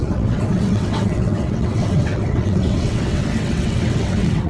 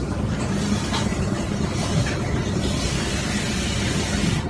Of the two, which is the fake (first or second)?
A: first